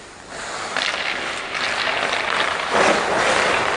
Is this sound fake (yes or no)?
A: no